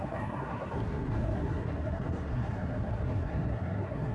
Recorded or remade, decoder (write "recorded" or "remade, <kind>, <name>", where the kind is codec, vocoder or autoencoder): remade, codec, SNAC